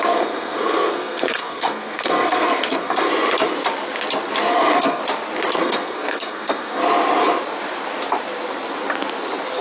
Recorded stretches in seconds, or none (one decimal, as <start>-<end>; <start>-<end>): 3.1-4.5; 5.0-5.6; 6.8-9.6